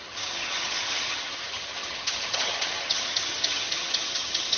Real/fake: fake